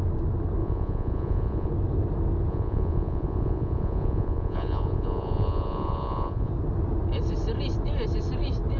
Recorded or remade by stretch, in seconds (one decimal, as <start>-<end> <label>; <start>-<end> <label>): 0.0-0.6 recorded; 0.6-1.7 remade; 1.7-2.5 recorded; 2.5-6.5 remade; 6.5-8.8 recorded